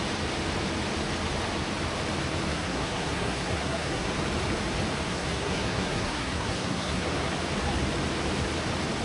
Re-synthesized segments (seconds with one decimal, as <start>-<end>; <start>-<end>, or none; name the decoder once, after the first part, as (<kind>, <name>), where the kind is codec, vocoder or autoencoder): 2.5-4.1 (codec, SNAC); 5.1-7.3